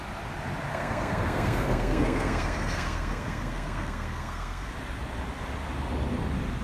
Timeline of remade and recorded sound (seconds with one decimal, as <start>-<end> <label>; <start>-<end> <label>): 0.0-0.7 recorded; 0.7-4.7 remade; 4.7-6.6 recorded